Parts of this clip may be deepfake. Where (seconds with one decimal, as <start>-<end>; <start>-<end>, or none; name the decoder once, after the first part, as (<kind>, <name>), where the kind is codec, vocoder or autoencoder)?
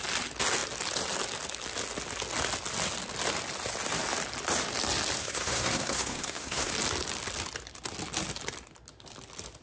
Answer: 5.2-6.7 (codec, SNAC)